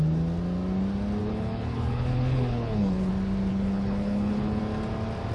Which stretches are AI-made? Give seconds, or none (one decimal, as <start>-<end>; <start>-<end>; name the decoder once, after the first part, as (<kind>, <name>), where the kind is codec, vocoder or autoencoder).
1.2-3.1 (codec, HILCodec); 3.5-4.6